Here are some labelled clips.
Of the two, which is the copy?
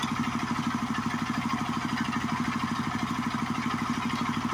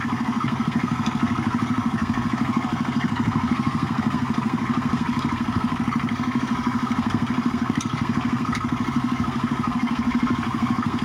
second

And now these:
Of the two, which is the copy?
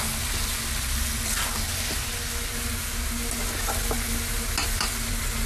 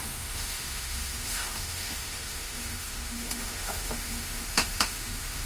second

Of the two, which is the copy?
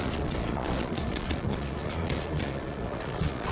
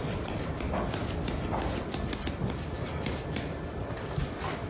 first